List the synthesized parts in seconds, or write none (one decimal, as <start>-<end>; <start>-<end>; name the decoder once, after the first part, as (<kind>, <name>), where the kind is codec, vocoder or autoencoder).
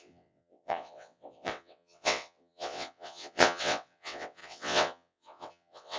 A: 0.0-6.0 (vocoder, WaveNeXt)